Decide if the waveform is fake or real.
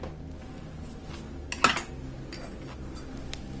real